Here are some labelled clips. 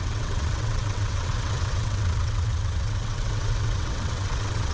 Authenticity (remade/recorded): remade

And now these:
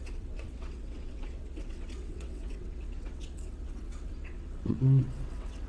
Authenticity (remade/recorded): remade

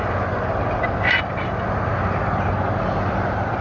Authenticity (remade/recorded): recorded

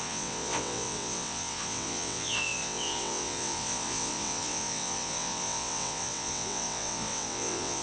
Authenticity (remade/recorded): remade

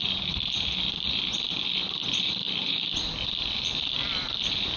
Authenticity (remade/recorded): recorded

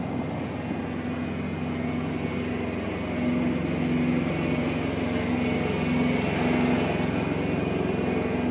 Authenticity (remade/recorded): recorded